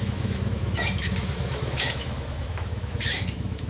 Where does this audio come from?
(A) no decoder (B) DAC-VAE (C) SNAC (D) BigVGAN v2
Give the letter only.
B